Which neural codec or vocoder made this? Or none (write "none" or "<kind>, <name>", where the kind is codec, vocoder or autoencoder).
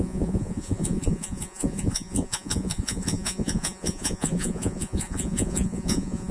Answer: vocoder, Vocos